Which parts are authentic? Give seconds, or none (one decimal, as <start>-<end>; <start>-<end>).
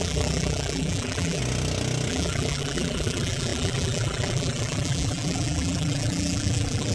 1.4-2.1